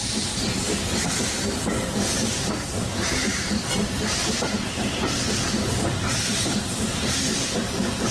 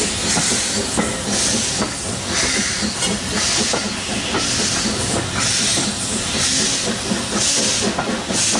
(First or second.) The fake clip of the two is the first